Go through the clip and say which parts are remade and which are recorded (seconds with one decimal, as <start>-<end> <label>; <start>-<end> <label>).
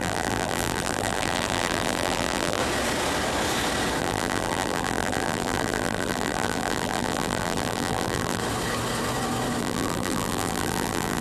0.0-2.6 remade; 2.6-4.0 recorded; 4.0-8.4 remade; 8.4-9.6 recorded; 9.6-11.2 remade